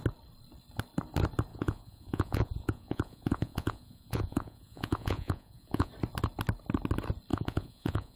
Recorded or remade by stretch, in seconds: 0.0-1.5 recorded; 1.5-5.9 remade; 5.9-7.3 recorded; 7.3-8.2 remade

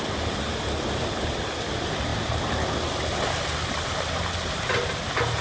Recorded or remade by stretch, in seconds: 0.0-5.4 recorded